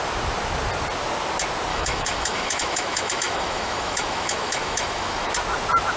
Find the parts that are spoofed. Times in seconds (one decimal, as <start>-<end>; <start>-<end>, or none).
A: 1.7-5.3